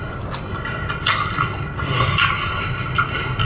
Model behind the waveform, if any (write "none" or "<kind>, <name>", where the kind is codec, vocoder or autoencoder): none